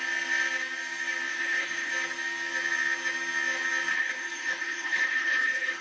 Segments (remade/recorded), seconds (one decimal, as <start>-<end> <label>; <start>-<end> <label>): 0.0-1.3 recorded; 1.3-1.9 remade; 1.9-3.9 recorded; 3.9-5.8 remade